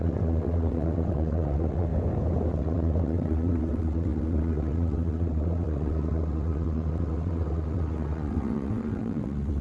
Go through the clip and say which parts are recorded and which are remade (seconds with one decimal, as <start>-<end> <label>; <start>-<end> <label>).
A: 0.0-1.9 remade; 1.9-2.5 recorded; 2.5-9.6 remade